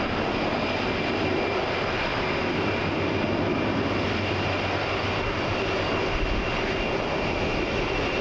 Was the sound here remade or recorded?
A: recorded